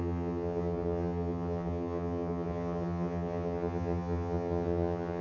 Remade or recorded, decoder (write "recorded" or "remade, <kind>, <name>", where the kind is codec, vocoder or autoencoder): remade, vocoder, HiFi-GAN